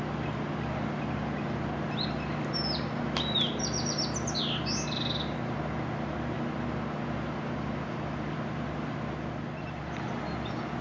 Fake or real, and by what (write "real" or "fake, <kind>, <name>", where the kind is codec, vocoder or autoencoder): real